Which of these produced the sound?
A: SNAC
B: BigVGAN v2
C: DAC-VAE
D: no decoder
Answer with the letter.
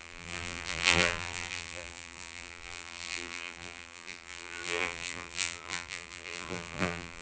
B